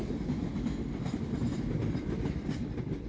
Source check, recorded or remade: recorded